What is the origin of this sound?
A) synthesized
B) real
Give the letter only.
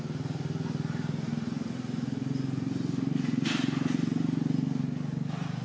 B